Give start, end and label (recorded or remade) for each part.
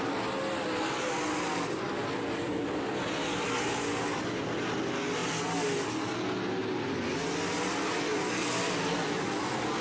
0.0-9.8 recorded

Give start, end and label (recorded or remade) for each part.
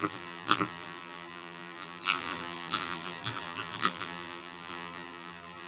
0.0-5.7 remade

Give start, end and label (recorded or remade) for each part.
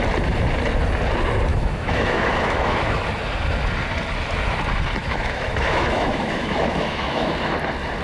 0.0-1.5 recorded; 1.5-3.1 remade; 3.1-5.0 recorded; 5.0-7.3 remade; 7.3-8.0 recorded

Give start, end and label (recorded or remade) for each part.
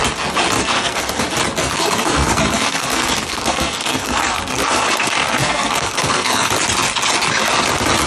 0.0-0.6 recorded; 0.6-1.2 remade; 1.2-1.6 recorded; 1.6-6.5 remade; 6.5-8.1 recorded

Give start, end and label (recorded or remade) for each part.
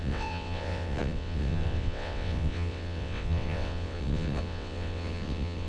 0.0-5.7 remade